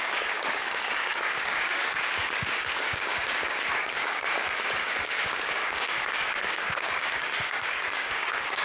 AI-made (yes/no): yes